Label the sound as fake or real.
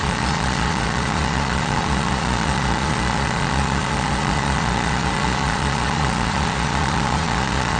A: fake